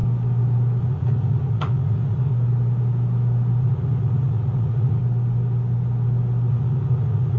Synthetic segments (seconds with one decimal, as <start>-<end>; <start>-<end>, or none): 0.8-2.3; 3.6-5.0; 6.5-7.4